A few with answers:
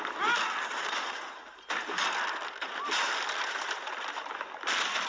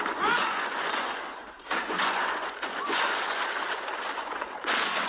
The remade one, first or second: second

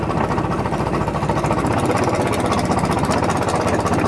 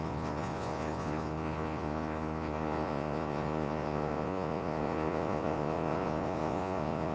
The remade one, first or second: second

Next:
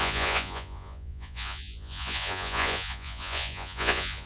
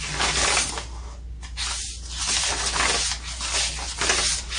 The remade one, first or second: first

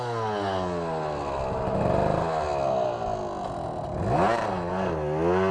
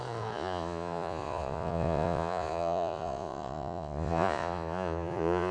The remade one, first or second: second